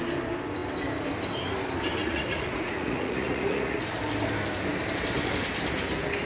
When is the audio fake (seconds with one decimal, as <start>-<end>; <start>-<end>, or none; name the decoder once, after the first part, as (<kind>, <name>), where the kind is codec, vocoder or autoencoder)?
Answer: 2.0-3.8 (vocoder, Vocos)